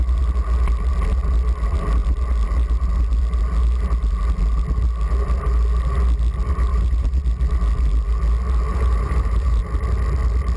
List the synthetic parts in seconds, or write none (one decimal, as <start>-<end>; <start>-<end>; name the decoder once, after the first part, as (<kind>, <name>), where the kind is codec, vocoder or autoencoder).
6.7-7.2 (vocoder, BigVGAN v2); 8.7-9.6